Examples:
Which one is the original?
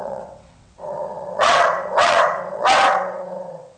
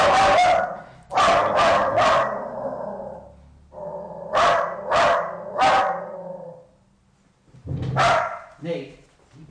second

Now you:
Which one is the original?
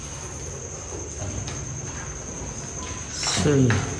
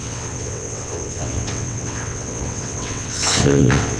first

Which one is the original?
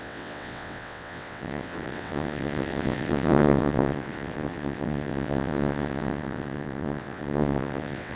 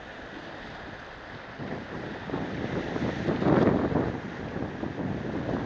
second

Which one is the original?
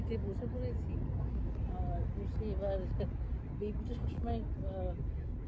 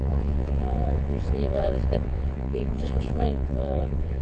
first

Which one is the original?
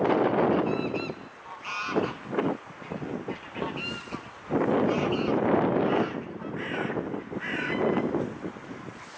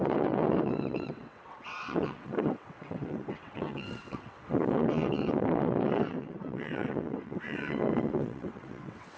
first